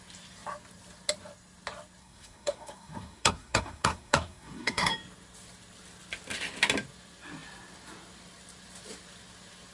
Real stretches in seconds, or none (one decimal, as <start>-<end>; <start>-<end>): 0.0-2.0; 4.9-9.7

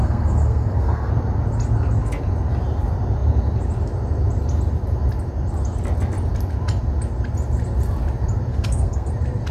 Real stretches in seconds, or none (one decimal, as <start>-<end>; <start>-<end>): 1.1-8.5; 9.1-9.5

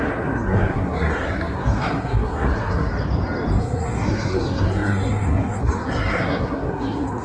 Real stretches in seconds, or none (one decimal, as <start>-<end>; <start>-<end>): 2.9-3.6

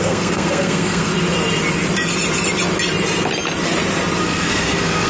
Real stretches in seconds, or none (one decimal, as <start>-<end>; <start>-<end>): 1.1-4.2

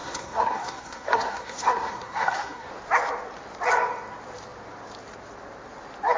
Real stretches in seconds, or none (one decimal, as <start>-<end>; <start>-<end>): 2.7-6.2

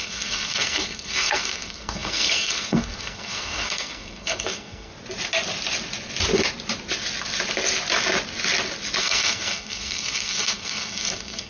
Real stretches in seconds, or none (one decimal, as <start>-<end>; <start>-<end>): 4.9-9.0